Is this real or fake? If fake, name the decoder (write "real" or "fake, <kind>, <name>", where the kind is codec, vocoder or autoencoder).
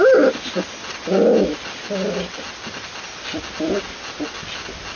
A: real